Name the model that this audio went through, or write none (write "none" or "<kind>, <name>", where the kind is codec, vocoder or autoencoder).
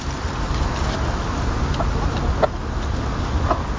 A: none